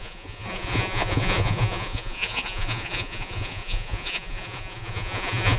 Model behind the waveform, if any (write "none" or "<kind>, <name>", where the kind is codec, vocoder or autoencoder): vocoder, Vocos